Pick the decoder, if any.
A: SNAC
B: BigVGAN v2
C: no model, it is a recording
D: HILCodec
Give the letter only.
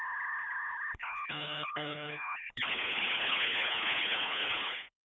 D